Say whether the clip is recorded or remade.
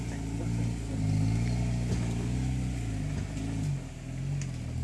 recorded